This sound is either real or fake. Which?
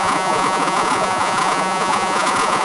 fake